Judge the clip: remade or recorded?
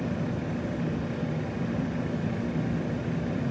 recorded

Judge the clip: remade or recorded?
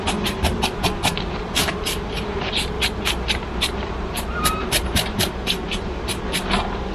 remade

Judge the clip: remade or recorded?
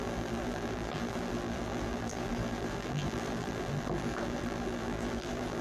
remade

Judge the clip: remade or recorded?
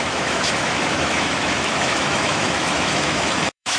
remade